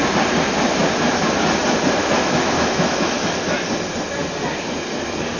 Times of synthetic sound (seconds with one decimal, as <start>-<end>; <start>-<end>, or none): 2.0-3.0